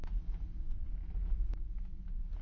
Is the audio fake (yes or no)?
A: no